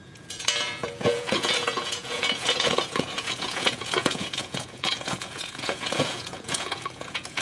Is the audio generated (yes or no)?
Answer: yes